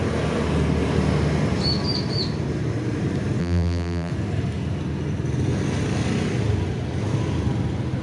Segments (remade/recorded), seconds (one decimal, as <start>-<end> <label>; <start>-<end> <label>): 0.0-3.4 recorded; 3.4-4.1 remade; 4.1-8.0 recorded